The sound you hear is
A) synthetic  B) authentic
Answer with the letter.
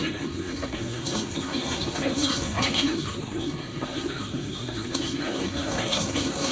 A